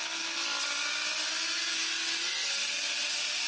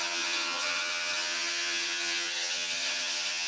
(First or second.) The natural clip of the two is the first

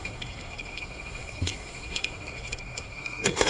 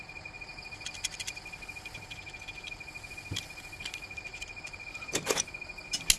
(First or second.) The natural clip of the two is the second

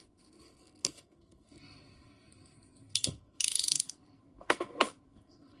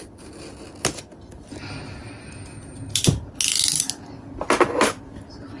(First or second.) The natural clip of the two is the second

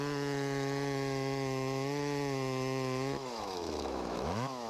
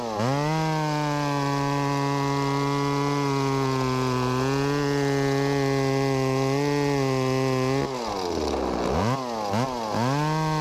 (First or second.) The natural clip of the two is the second